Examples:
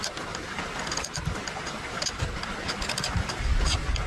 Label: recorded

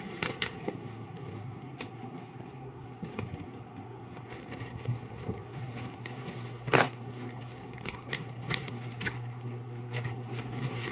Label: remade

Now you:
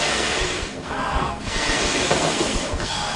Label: remade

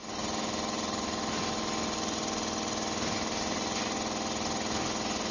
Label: recorded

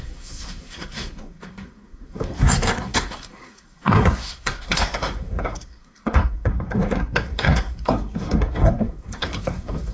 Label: remade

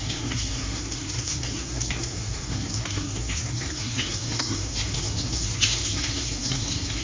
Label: remade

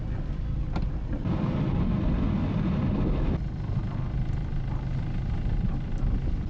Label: recorded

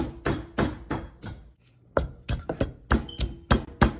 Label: recorded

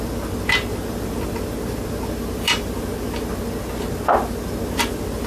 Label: recorded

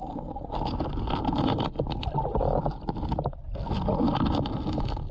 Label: recorded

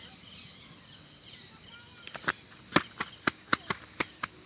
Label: recorded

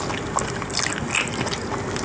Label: recorded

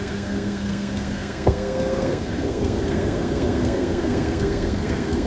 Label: remade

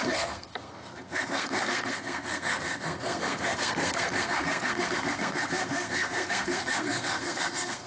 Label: remade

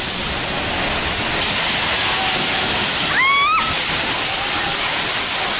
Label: recorded